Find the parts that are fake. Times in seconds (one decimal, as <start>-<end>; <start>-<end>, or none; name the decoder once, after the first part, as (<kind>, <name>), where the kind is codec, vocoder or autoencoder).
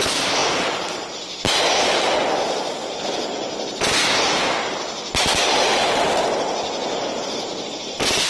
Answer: 2.8-5.4 (vocoder, BigVGAN v2)